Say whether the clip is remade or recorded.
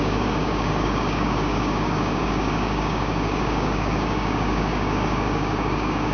remade